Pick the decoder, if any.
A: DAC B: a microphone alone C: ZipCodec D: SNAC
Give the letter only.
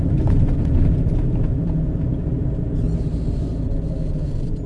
B